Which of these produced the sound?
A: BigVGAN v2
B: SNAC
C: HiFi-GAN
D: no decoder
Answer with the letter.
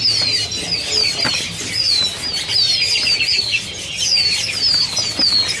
D